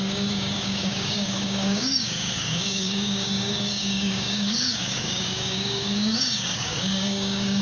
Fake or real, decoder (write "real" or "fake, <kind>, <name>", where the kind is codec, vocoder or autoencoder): fake, codec, DAC